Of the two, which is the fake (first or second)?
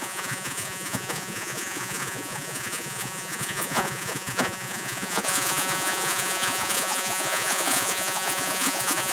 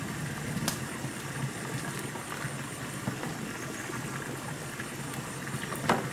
first